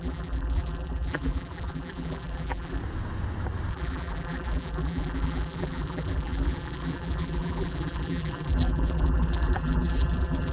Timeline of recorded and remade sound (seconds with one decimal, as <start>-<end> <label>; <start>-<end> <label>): 0.0-2.8 remade; 2.8-3.7 recorded; 3.7-10.5 remade